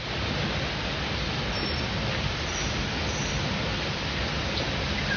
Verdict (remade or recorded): recorded